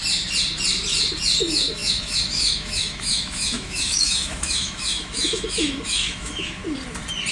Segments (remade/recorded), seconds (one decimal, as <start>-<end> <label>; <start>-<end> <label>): 0.0-1.4 recorded; 1.4-6.6 remade; 6.6-7.3 recorded